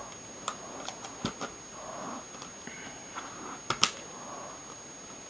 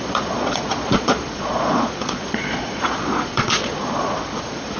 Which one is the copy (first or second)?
second